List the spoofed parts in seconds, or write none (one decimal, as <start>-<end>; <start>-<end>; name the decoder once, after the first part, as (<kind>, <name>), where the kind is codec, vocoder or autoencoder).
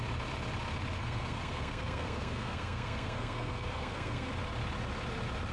1.0-4.3 (codec, SNAC)